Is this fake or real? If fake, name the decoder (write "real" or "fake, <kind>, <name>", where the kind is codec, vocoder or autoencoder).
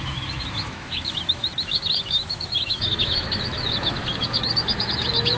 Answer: fake, autoencoder, DAC-VAE